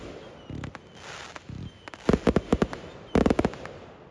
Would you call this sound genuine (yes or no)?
yes